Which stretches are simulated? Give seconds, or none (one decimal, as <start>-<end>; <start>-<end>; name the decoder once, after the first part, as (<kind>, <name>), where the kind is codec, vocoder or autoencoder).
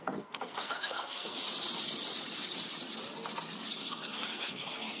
0.0-1.4 (codec, SNAC); 3.9-5.0